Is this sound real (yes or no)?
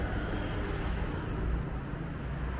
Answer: yes